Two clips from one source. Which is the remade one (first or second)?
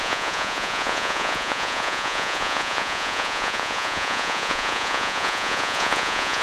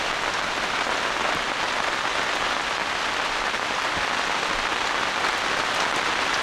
first